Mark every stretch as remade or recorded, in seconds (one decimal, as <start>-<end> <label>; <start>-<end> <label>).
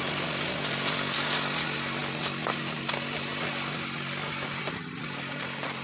0.0-5.8 recorded